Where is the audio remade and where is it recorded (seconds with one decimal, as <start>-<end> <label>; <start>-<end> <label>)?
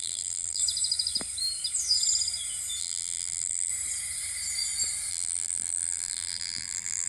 0.0-0.6 remade; 0.6-2.8 recorded; 2.8-3.7 remade; 3.7-5.1 recorded; 5.1-7.1 remade